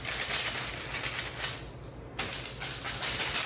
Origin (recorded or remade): recorded